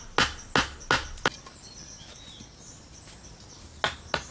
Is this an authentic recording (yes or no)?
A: yes